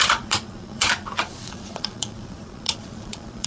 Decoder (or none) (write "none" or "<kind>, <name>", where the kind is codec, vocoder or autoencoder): vocoder, Vocos